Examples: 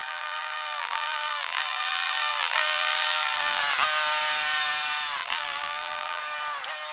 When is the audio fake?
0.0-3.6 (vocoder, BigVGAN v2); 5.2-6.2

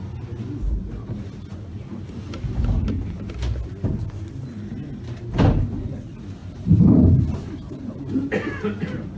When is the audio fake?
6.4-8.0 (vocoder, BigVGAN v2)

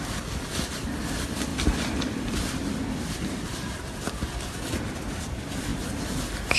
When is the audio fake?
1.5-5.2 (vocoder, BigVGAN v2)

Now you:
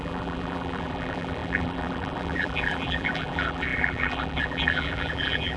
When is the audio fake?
0.0-5.6 (vocoder, BigVGAN v2)

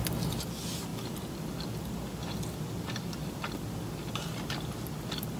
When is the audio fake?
none

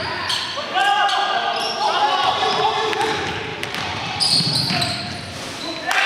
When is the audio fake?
0.8-2.3 (vocoder, BigVGAN v2); 3.5-5.0